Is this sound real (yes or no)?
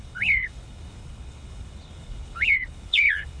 no